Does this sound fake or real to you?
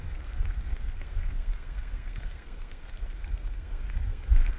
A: fake